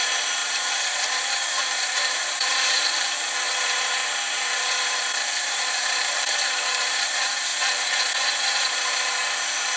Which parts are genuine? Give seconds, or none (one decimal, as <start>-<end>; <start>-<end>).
7.5-8.4